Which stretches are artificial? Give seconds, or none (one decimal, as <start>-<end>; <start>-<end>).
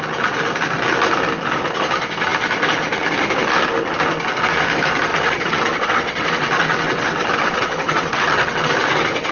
5.1-8.7